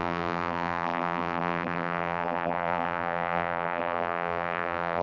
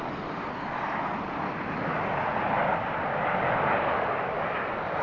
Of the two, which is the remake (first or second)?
first